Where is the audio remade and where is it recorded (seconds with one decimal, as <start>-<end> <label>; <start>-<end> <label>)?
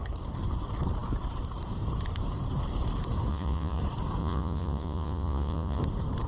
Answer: 0.0-3.3 recorded; 3.3-3.8 remade; 3.8-4.2 recorded; 4.2-5.8 remade; 5.8-6.3 recorded